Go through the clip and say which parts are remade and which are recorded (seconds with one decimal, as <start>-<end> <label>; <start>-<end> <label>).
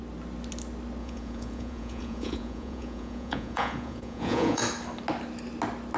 0.0-1.0 recorded; 1.0-4.6 remade; 4.6-6.0 recorded